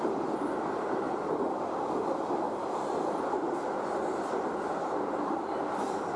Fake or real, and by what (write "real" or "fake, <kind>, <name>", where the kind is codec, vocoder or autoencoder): fake, vocoder, BigVGAN v2